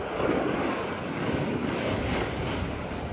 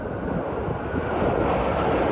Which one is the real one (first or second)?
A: second